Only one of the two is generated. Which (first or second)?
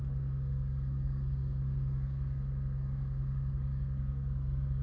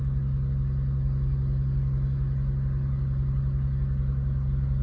first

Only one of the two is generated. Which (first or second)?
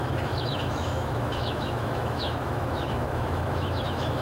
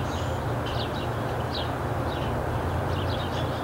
first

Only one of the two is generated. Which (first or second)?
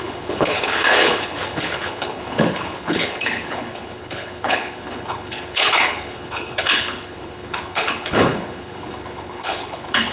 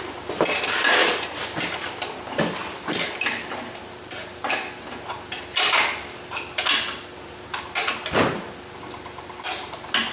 first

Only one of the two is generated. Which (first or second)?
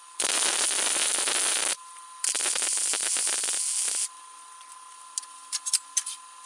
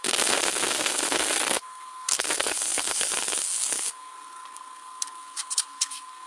second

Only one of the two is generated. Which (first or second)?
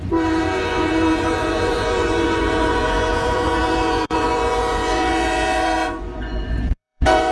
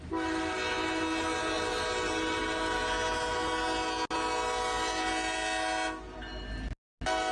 first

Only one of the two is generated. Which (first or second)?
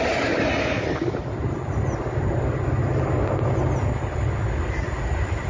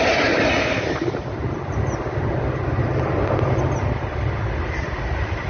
second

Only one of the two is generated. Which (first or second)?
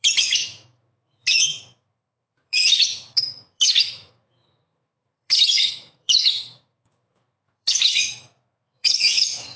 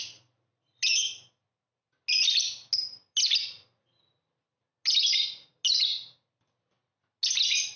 first